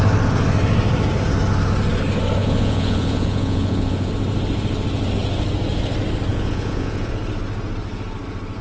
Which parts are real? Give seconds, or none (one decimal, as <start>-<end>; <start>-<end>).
0.0-2.4; 4.1-6.3; 7.1-8.6